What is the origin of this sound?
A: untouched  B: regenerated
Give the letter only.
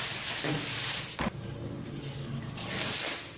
A